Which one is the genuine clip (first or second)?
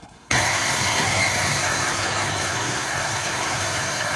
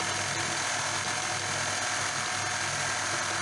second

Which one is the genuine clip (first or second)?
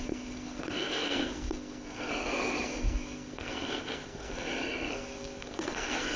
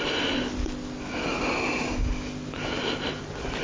second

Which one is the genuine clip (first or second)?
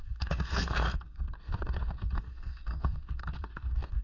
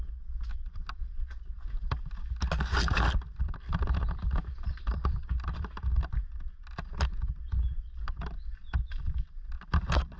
second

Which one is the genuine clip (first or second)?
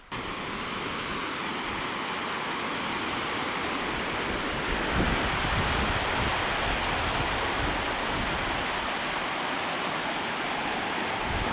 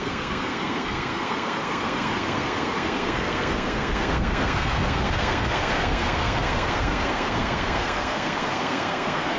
first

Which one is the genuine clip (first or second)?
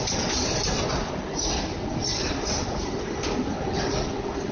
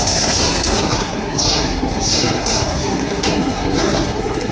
first